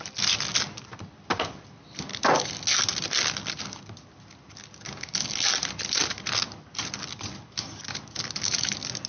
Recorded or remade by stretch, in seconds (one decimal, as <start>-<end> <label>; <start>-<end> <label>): 0.0-9.1 recorded